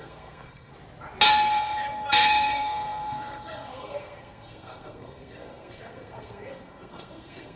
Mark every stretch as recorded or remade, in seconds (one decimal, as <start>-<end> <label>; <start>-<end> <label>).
0.0-0.7 remade; 0.7-1.3 recorded; 1.3-7.6 remade